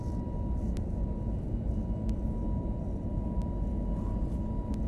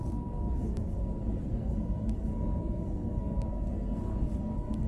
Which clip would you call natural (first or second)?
first